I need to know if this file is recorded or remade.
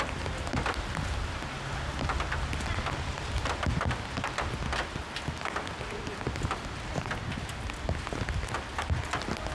recorded